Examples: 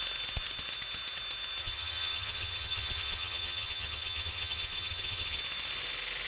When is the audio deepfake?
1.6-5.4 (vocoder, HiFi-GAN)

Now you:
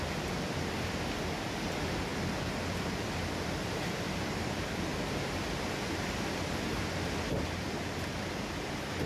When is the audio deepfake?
none

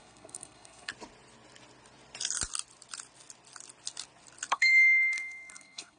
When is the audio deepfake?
0.0-0.9 (codec, SNAC); 4.5-6.0